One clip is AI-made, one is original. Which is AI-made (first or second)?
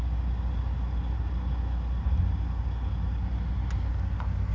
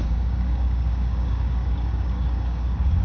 second